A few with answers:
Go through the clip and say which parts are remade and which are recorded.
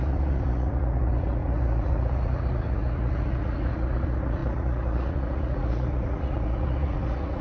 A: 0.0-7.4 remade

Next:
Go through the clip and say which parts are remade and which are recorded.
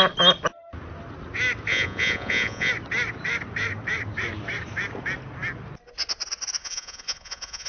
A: 0.0-1.7 recorded; 1.7-2.7 remade; 2.7-6.6 recorded; 6.6-7.7 remade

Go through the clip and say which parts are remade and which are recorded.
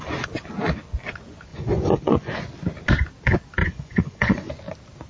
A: 0.0-1.5 recorded; 1.5-2.3 remade; 2.3-3.6 recorded; 3.6-4.5 remade; 4.5-5.1 recorded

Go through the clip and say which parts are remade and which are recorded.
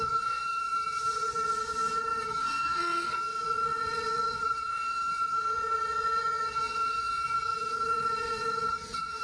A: 0.0-9.2 remade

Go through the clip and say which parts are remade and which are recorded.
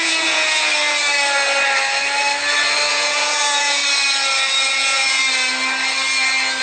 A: 0.0-0.7 remade; 0.7-2.9 recorded; 2.9-3.8 remade; 3.8-4.7 recorded; 4.7-5.2 remade; 5.2-6.6 recorded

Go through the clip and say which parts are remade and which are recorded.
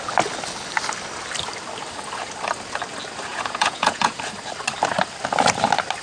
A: 0.0-3.3 recorded; 3.3-4.2 remade; 4.2-6.0 recorded